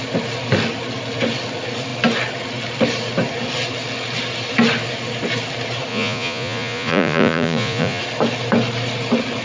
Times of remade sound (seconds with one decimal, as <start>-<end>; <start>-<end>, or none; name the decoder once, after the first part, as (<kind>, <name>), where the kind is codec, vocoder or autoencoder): 5.9-8.0 (vocoder, Vocos)